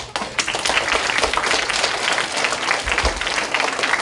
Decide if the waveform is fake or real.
real